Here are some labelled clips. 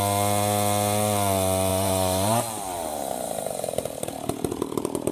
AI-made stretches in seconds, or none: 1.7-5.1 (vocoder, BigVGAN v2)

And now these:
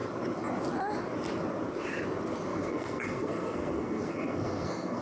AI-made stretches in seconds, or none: 2.5-5.0 (codec, SNAC)

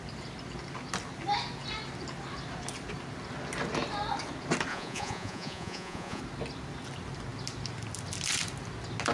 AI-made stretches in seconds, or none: 4.7-6.2 (vocoder, Vocos)

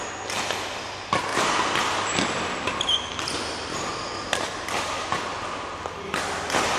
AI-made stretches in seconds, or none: 1.3-2.0 (vocoder, BigVGAN v2)

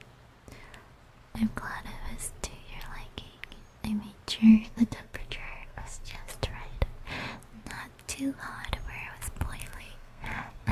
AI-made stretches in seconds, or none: 4.5-6.3 (codec, SNAC); 9.6-10.7

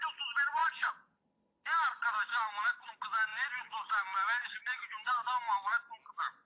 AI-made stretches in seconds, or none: 0.6-1.2 (vocoder, Vocos)

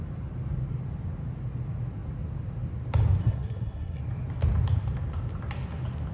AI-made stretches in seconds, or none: 3.2-4.0 (codec, SNAC)

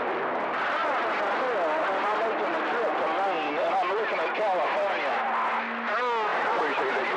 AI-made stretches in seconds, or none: 6.3-7.2 (vocoder, BigVGAN v2)